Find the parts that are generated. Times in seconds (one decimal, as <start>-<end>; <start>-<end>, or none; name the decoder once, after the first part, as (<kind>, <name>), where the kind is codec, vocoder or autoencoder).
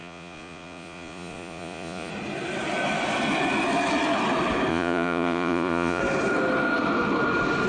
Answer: 0.0-2.1 (vocoder, Vocos); 4.7-6.0